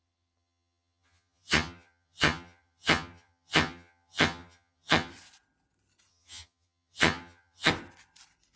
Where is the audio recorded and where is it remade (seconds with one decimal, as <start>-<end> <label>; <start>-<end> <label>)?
0.0-5.1 remade; 5.1-6.1 recorded; 6.1-7.7 remade; 7.7-8.6 recorded